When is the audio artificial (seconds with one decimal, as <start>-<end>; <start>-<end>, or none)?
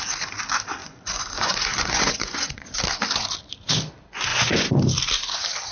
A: 0.8-2.8; 4.3-4.8